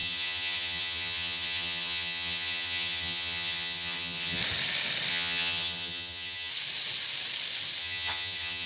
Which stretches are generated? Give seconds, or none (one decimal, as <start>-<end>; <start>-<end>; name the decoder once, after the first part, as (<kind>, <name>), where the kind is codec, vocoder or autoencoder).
0.0-4.4 (vocoder, HiFi-GAN); 5.1-6.5; 7.8-8.7